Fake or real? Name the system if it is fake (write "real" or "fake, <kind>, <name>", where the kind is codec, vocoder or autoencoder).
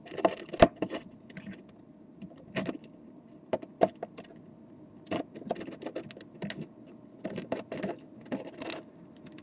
real